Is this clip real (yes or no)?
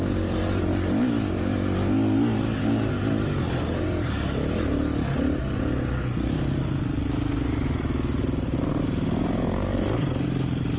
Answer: yes